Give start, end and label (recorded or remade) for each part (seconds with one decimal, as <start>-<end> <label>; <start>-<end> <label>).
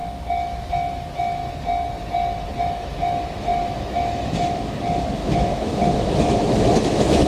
0.0-1.4 remade; 1.4-2.6 recorded; 2.6-7.3 remade